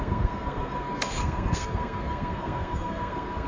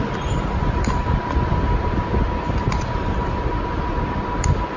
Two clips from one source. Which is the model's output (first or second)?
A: first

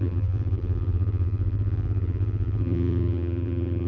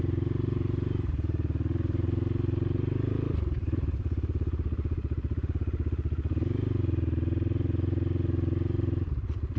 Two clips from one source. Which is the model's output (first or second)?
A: first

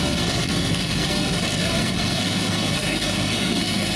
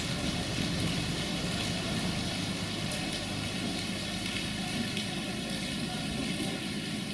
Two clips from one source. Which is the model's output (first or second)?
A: first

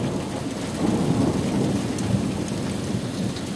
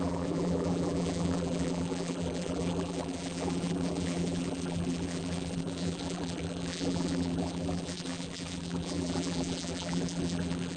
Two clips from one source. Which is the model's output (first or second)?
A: second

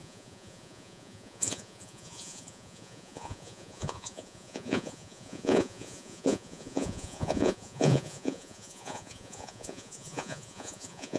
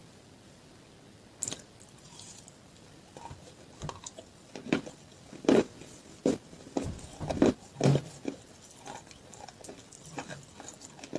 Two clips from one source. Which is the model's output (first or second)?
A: first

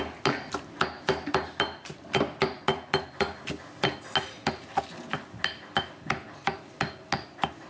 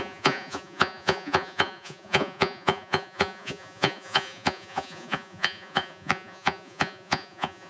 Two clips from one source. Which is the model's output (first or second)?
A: second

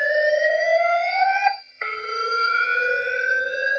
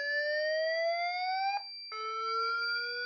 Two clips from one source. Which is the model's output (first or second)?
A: first